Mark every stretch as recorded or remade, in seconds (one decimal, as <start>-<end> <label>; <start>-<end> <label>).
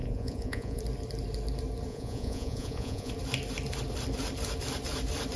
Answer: 0.0-0.8 remade; 0.8-1.9 recorded; 1.9-3.1 remade; 3.1-5.4 recorded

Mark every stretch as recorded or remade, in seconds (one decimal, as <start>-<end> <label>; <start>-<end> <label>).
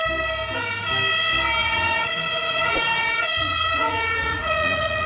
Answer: 0.0-1.6 recorded; 1.6-5.1 remade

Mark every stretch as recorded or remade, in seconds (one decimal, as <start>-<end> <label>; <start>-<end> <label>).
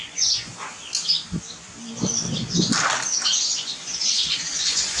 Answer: 0.0-0.5 remade; 0.5-3.3 recorded; 3.3-5.0 remade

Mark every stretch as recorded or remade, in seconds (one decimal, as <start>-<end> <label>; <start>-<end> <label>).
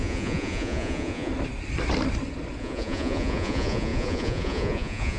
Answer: 0.0-1.3 remade; 1.3-2.6 recorded; 2.6-5.2 remade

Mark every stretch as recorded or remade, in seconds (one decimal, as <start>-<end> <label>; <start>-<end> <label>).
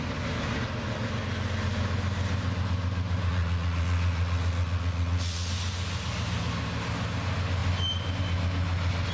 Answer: 0.0-3.3 recorded; 3.3-5.5 remade; 5.5-9.1 recorded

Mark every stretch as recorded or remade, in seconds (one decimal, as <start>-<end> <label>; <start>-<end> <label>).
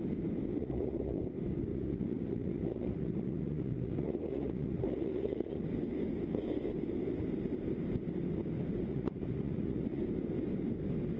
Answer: 0.0-0.6 recorded; 0.6-1.2 remade; 1.2-1.7 recorded; 1.7-5.6 remade; 5.6-8.9 recorded; 8.9-10.0 remade; 10.0-11.2 recorded